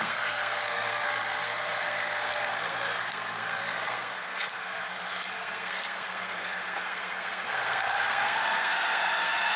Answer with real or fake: fake